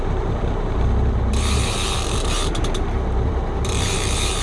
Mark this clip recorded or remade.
remade